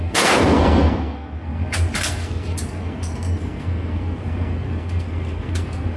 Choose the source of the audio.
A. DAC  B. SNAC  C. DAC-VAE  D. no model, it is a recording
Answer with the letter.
B